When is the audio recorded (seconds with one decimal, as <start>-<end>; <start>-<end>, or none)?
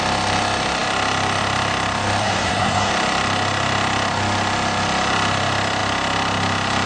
0.0-2.2; 2.9-6.9